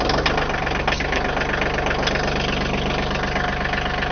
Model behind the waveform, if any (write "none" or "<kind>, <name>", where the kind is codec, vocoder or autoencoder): none